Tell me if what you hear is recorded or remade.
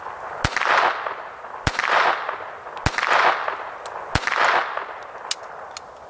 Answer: recorded